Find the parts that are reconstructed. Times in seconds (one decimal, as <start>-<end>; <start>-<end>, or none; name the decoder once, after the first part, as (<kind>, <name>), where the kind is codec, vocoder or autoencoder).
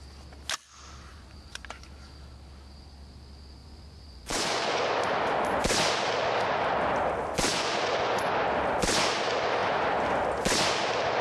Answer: 1.1-1.9 (vocoder, Vocos); 3.6-4.9; 7.5-8.3